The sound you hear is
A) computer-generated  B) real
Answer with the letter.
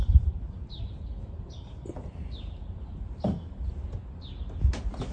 B